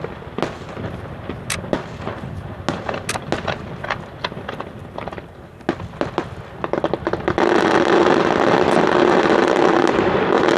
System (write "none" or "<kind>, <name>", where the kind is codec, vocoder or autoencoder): none